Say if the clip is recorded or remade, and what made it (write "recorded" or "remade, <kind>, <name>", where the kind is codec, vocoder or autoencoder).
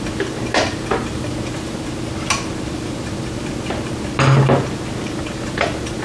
recorded